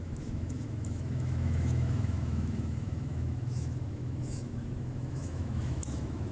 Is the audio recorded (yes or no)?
no